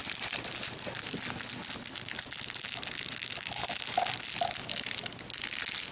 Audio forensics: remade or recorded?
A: recorded